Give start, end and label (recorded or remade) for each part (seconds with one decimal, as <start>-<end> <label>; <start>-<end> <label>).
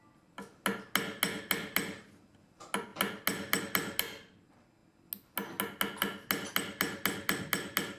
0.0-8.0 recorded